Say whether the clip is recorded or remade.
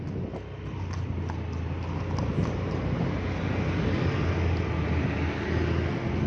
recorded